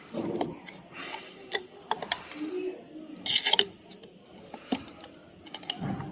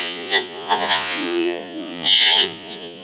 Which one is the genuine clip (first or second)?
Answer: first